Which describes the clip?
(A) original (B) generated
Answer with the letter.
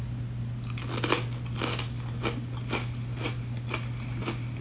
A